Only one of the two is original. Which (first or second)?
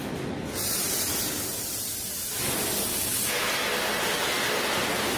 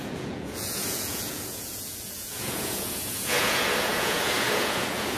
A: first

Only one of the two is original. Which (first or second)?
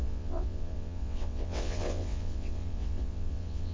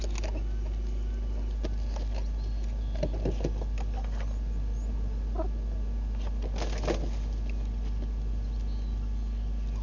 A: second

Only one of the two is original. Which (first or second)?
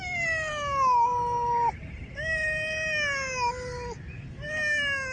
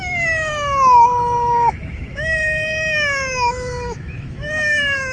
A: first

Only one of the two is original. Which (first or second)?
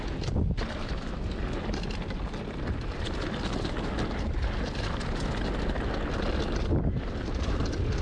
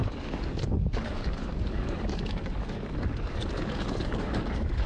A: first